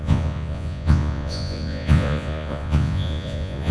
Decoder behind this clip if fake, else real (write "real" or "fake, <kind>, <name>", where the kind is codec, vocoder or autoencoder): fake, vocoder, Vocos